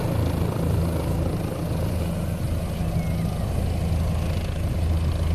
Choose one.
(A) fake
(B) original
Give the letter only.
B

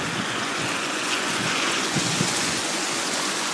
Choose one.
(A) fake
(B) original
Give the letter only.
A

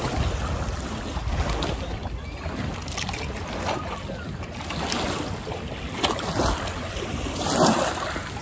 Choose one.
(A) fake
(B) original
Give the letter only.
B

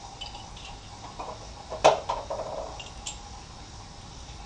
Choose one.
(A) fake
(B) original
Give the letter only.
B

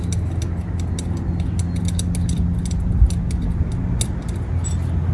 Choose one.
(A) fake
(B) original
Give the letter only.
B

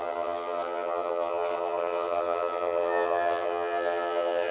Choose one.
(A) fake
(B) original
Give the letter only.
A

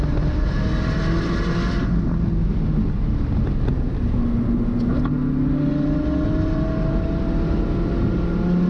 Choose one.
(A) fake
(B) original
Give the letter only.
B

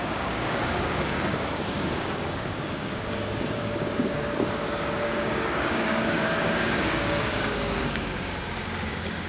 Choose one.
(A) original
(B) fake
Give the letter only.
B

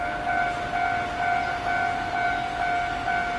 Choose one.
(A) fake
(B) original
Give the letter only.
B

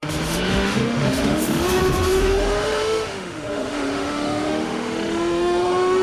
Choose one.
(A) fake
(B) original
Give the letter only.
A